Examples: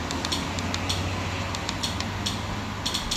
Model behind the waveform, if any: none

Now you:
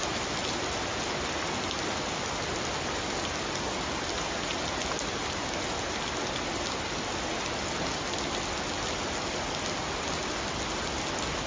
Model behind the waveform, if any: none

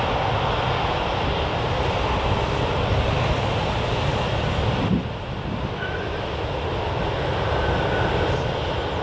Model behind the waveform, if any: none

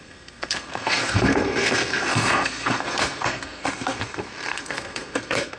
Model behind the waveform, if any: codec, SNAC